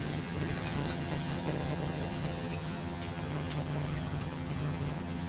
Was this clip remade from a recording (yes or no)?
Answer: yes